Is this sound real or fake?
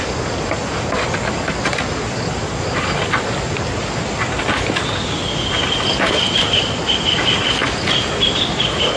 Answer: real